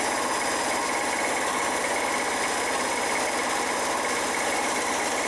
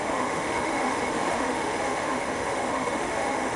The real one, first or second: first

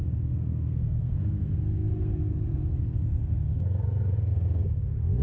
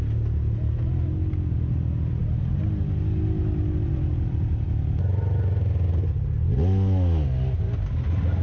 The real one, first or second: second